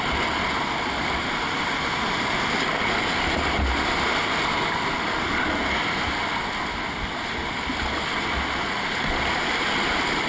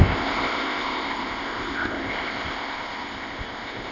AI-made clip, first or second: second